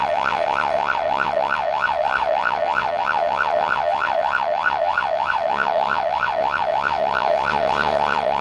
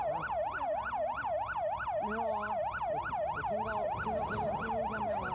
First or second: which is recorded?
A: second